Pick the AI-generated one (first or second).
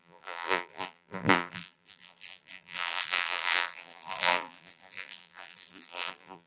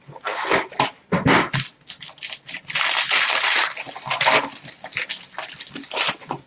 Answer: first